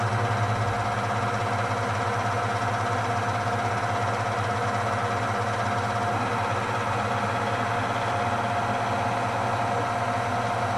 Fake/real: real